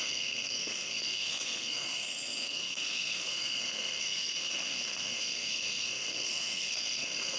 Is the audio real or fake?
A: fake